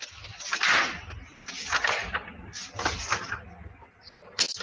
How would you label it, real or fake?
real